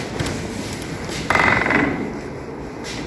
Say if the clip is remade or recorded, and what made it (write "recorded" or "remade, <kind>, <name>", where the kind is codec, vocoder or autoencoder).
recorded